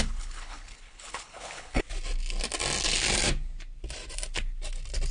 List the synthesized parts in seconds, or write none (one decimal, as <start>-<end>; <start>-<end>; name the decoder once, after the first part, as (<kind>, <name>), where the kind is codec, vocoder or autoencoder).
0.0-1.8 (codec, HILCodec)